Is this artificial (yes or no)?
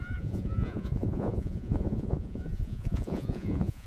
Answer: yes